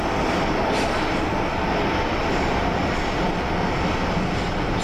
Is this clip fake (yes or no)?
no